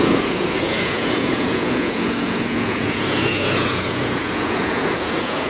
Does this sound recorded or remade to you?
remade